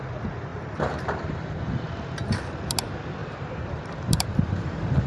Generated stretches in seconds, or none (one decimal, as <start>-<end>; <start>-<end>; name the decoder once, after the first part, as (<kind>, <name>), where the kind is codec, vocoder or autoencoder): 0.5-1.9 (vocoder, BigVGAN v2); 3.2-5.1